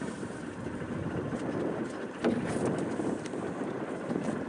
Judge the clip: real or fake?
real